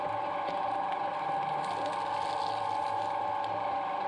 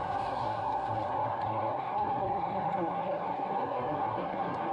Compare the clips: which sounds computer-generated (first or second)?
second